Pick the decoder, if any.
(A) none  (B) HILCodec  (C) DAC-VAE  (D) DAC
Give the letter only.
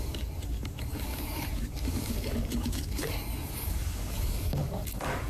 D